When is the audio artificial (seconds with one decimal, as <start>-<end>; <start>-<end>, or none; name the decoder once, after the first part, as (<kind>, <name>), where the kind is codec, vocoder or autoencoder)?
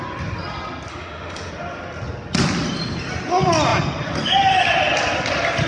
0.9-1.5 (autoencoder, DAC-VAE)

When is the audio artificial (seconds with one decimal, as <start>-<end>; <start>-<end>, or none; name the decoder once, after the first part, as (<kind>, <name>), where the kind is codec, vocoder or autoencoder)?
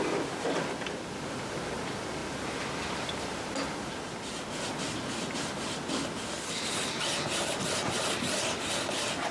none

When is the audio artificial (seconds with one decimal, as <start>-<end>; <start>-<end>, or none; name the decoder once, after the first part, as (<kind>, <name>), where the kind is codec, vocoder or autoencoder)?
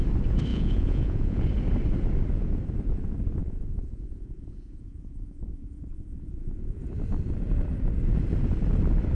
0.5-1.4 (vocoder, Vocos); 3.4-6.8